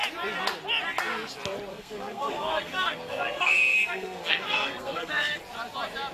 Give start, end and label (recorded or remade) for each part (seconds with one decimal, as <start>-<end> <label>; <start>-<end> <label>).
0.0-1.7 recorded; 1.7-5.4 remade; 5.4-6.1 recorded